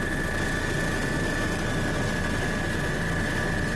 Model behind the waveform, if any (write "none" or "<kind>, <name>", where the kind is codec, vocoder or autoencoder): none